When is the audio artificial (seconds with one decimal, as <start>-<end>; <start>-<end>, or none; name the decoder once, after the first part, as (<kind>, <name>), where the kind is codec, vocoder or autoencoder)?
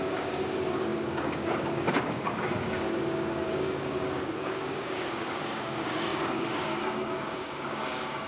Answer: 0.0-8.3 (codec, DAC)